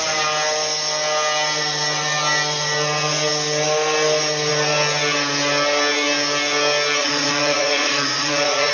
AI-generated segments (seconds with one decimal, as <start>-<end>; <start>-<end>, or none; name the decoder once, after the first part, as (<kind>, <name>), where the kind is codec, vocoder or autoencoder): 7.0-8.7 (vocoder, Vocos)